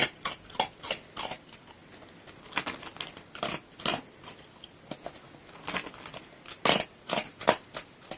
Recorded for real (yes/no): yes